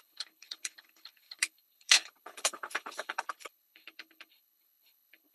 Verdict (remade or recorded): remade